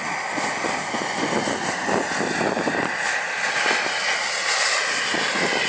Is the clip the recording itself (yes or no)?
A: yes